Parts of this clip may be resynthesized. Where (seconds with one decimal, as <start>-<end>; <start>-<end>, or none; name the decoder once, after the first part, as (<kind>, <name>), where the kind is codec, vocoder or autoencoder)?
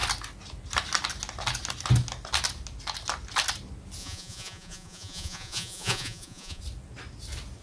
4.0-6.6 (vocoder, Vocos)